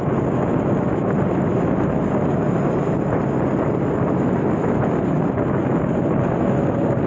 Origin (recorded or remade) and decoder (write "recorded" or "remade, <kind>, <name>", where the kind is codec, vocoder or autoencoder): recorded